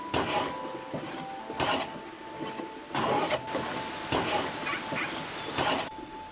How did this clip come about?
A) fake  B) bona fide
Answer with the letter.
B